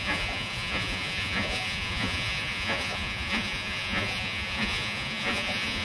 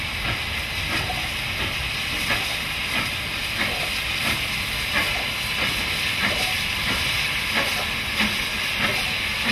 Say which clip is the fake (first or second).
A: first